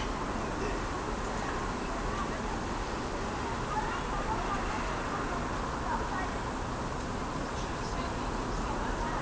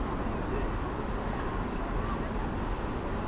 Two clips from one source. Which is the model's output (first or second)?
second